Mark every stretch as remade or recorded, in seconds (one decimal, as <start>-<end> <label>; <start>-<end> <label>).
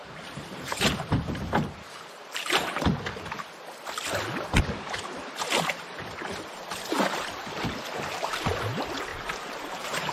0.0-2.9 remade; 2.9-8.1 recorded; 8.1-10.1 remade